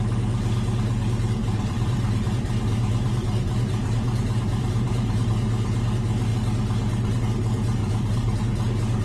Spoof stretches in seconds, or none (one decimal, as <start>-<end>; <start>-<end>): 1.4-5.3; 7.8-8.4